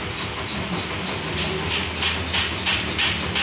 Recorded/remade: recorded